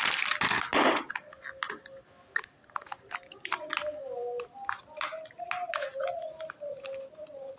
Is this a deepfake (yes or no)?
no